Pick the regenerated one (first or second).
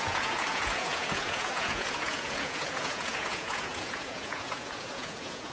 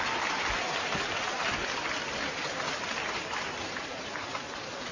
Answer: first